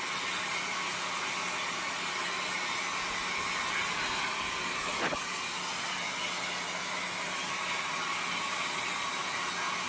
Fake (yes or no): no